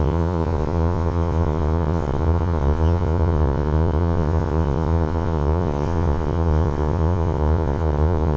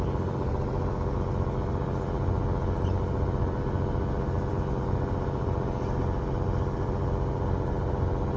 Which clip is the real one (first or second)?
second